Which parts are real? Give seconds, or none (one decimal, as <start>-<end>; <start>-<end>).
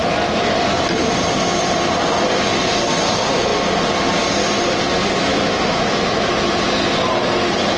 0.0-5.3; 6.3-7.8